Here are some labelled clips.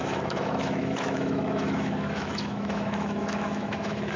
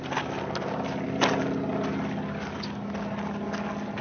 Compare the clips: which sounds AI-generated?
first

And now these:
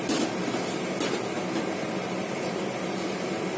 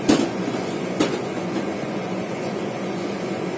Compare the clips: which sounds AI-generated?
second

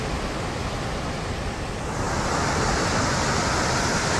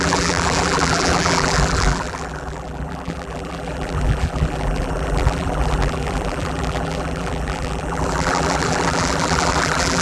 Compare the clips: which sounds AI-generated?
second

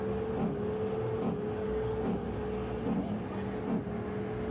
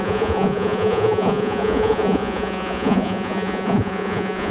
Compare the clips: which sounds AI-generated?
second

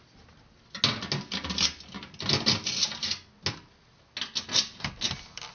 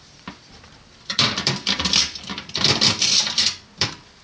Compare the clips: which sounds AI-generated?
second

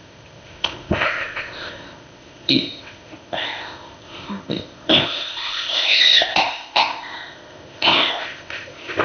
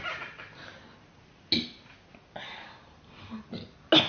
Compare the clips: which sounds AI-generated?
first